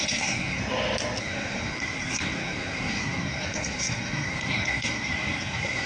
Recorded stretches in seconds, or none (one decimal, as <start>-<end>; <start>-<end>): 0.6-1.2